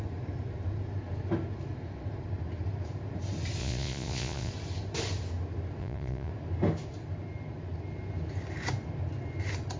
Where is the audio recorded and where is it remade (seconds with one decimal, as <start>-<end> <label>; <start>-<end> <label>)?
0.0-3.6 recorded; 3.6-4.5 remade; 4.5-5.8 recorded; 5.8-6.3 remade; 6.3-9.8 recorded